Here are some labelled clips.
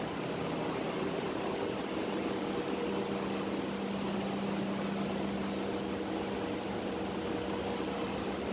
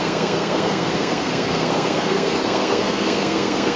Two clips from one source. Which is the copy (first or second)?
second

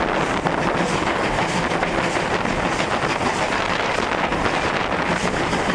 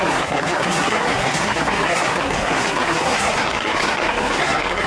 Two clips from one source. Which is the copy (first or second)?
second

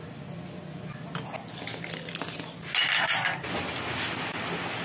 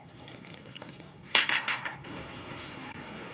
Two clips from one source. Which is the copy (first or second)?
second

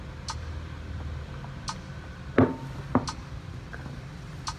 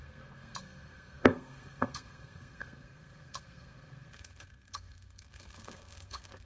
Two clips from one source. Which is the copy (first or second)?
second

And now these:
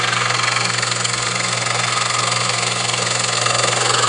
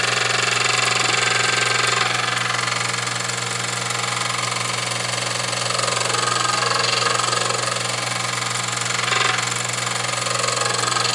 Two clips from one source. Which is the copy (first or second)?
first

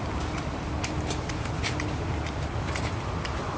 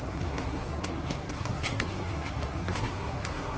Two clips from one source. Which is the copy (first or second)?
second